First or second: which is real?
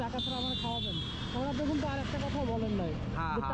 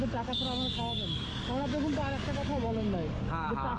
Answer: first